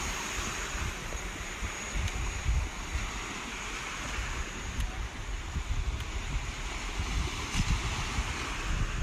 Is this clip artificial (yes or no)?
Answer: no